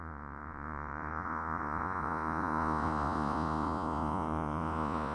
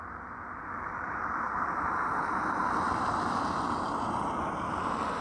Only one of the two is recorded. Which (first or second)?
second